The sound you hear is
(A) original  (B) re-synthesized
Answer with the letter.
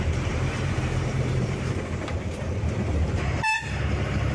B